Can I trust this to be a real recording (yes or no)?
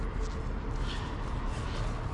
yes